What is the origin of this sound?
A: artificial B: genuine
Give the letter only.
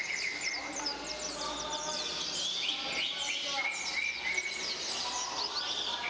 B